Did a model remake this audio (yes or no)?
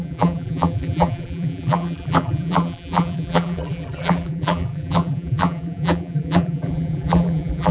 yes